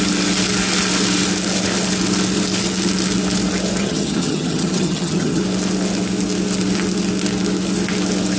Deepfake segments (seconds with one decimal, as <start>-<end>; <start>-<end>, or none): 3.8-5.4